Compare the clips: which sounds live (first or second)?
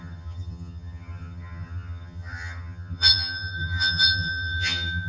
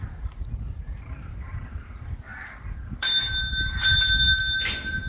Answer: second